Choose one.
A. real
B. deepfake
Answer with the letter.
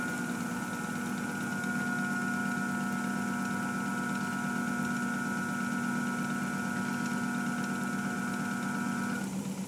A